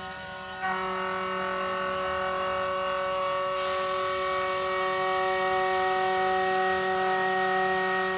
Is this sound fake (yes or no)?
no